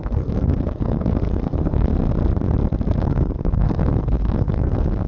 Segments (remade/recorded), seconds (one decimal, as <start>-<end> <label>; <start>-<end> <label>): 0.0-1.9 remade; 1.9-3.0 recorded; 3.0-5.1 remade